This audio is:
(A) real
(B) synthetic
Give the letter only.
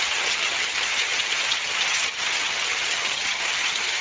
B